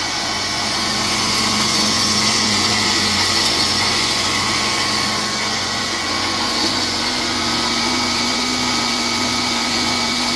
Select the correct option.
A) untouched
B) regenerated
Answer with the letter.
B